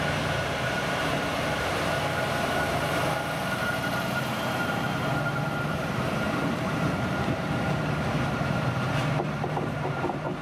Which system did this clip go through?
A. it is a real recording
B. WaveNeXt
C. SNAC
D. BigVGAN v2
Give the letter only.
D